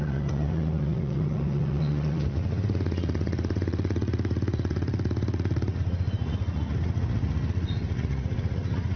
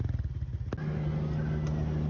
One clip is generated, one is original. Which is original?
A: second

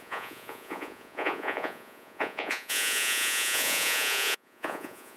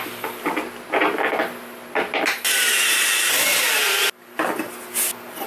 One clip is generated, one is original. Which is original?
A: second